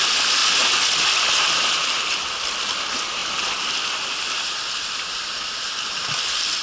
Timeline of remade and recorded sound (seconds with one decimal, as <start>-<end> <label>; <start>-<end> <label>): 0.0-6.6 recorded